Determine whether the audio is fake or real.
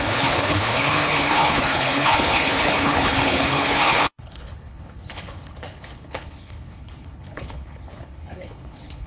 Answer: fake